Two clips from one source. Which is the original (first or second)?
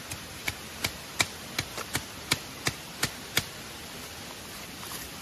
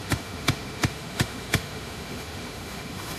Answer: first